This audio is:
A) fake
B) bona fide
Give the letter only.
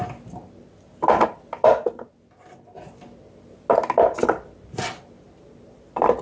B